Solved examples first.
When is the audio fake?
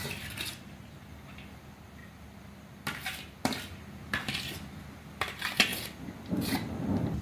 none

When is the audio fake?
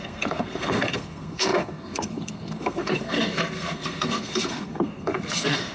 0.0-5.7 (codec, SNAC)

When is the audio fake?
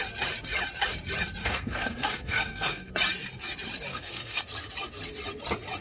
1.4-2.9 (codec, SNAC); 3.9-4.4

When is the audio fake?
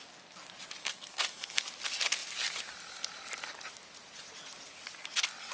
0.8-1.6 (codec, SNAC)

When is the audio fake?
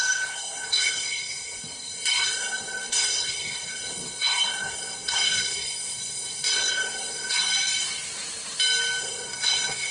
0.0-7.5 (codec, SNAC); 9.0-9.9